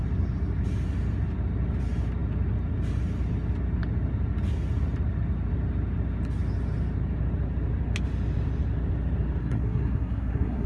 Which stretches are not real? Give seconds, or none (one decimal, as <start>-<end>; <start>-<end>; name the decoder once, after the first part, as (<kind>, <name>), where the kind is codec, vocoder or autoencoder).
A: 9.4-10.7 (codec, SNAC)